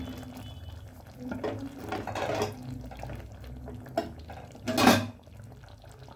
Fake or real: real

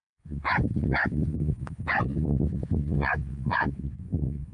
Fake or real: fake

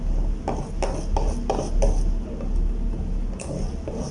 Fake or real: real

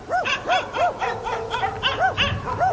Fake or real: real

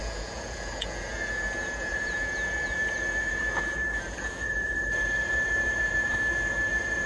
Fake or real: fake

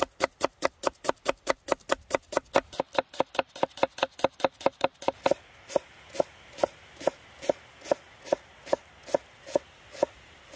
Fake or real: real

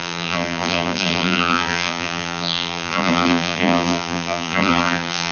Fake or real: fake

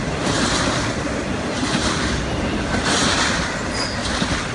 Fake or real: real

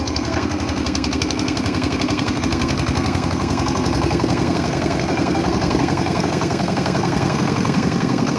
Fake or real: fake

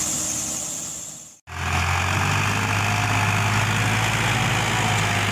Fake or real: real